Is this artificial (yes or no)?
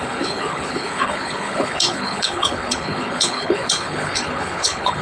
yes